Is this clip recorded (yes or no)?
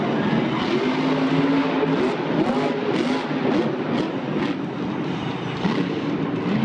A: yes